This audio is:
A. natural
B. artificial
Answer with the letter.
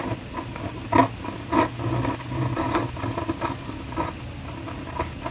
A